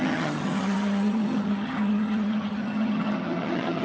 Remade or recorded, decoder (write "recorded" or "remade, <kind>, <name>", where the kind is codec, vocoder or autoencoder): remade, vocoder, HiFi-GAN